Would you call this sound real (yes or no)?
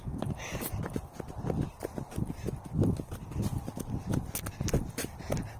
yes